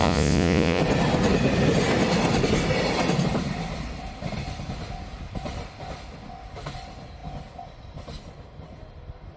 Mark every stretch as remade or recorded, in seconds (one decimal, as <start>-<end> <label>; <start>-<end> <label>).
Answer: 0.0-0.8 remade; 0.8-9.4 recorded